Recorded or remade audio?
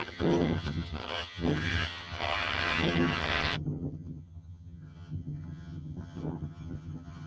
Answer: remade